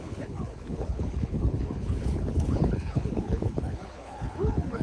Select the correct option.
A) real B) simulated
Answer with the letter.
B